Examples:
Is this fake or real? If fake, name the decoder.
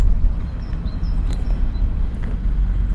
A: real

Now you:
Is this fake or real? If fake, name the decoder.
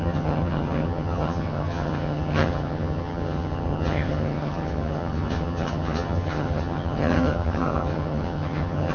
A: fake, vocoder, HiFi-GAN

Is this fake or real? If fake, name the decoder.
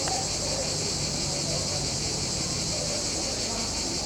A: fake, vocoder, BigVGAN v2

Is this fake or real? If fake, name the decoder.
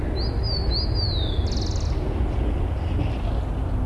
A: real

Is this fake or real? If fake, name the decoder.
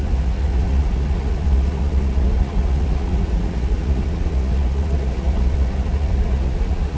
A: fake, vocoder, Vocos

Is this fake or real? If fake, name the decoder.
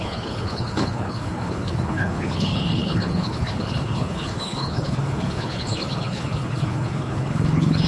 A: fake, codec, HILCodec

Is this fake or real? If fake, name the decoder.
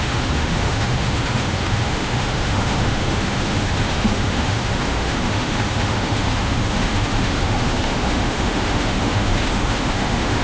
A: fake, autoencoder, DAC-VAE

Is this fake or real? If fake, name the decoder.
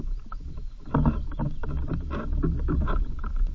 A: real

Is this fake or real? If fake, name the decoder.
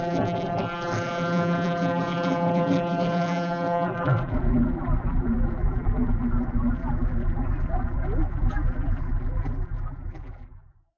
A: fake, vocoder, BigVGAN v2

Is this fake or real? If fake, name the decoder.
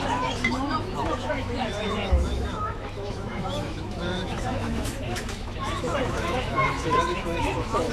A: fake, autoencoder, DAC-VAE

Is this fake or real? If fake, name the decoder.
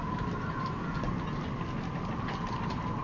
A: real